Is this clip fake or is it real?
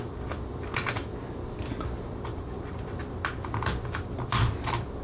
fake